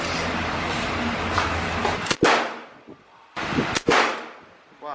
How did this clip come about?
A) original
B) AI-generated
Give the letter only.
A